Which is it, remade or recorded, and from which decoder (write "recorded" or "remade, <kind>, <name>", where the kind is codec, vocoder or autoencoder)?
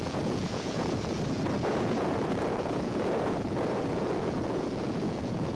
remade, vocoder, Vocos